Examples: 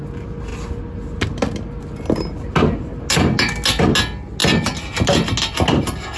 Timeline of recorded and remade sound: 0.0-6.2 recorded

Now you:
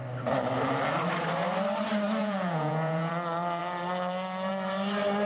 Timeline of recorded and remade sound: 0.0-2.2 recorded; 2.2-3.1 remade; 3.1-5.3 recorded

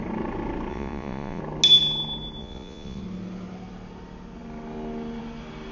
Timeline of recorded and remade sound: 0.0-0.7 recorded; 0.7-1.4 remade; 1.4-2.4 recorded; 2.4-3.0 remade; 3.0-5.7 recorded